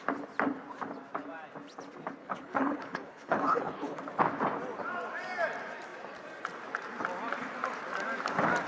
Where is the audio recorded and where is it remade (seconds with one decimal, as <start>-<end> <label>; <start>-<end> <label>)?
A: 0.0-2.2 recorded; 2.2-4.0 remade; 4.0-8.7 recorded